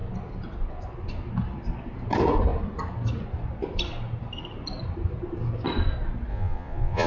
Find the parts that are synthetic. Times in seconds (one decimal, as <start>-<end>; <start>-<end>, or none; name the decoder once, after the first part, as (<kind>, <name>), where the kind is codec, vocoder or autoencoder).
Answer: 6.3-7.1 (vocoder, Vocos)